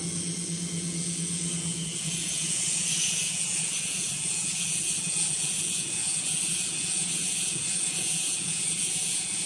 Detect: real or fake fake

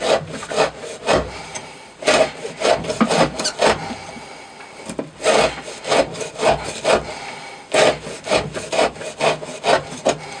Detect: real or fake real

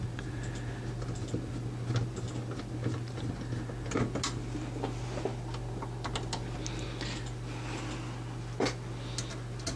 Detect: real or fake real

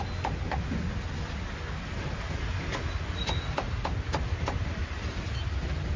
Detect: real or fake real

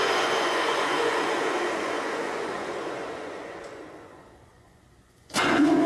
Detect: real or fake fake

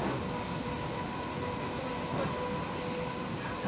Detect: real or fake real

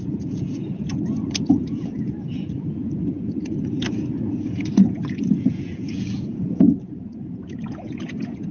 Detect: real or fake fake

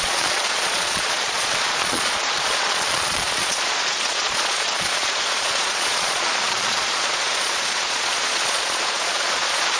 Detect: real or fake fake